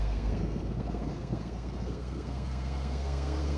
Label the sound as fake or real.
fake